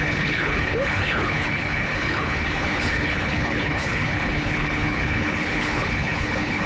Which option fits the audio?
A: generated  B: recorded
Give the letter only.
A